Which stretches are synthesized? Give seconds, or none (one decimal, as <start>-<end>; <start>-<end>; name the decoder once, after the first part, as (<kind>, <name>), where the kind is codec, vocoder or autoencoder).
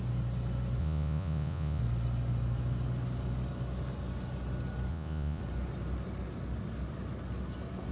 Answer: 0.8-1.8 (vocoder, Vocos); 4.9-5.4